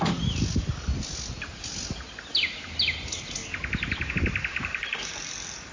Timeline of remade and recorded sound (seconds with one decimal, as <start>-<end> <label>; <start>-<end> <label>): 0.0-4.5 recorded; 4.5-5.1 remade; 5.1-5.7 recorded